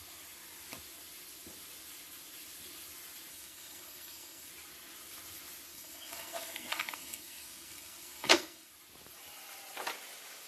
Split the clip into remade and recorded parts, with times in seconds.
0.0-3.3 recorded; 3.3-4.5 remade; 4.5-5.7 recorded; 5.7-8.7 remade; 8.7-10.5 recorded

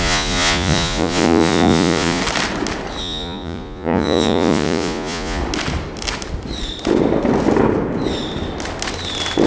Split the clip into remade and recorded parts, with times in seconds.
0.0-2.2 remade; 2.2-3.0 recorded; 3.0-5.4 remade; 5.4-9.5 recorded